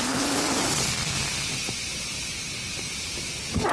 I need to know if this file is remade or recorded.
remade